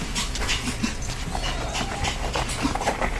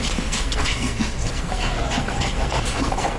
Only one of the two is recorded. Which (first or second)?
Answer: first